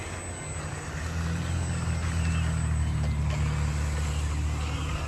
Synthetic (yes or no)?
no